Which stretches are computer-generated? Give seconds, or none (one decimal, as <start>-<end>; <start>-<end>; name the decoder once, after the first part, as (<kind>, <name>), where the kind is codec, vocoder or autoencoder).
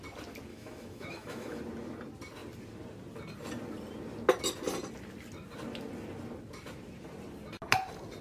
0.5-1.6 (autoencoder, DAC-VAE)